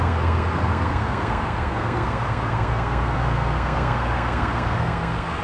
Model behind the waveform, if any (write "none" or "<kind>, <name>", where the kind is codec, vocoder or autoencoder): codec, SNAC